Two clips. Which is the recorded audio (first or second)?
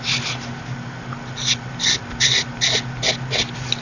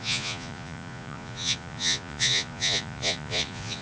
first